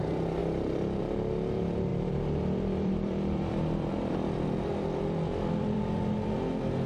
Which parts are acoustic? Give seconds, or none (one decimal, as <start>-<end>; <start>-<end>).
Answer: 0.0-0.4; 1.0-1.9; 5.8-6.9